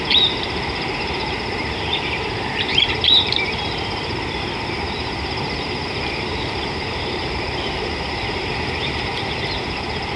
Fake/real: fake